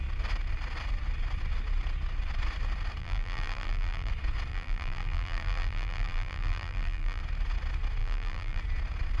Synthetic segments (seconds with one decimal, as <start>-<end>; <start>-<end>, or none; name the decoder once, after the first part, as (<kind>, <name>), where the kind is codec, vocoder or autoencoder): 3.0-4.1 (vocoder, BigVGAN v2); 4.5-7.2; 8.0-8.6